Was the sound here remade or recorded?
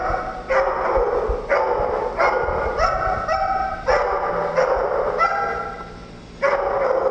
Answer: recorded